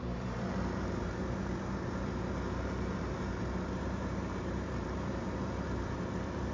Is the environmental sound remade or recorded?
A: remade